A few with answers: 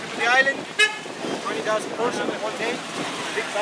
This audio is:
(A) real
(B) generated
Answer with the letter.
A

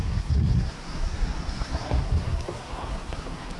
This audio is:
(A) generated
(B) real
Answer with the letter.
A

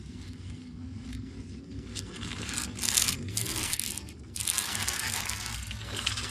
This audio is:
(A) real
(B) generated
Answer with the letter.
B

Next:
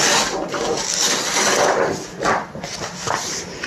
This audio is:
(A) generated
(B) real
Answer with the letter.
B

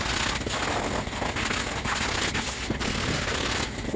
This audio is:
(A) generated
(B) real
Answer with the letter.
B